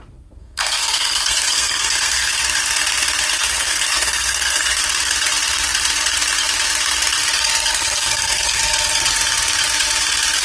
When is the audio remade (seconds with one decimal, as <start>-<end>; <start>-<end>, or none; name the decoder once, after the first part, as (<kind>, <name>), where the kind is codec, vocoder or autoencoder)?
0.0-2.4 (codec, SNAC); 3.3-4.8; 7.7-8.6